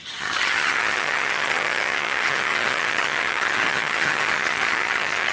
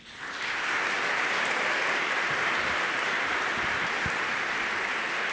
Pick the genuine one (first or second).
second